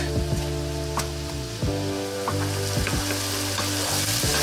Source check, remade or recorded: recorded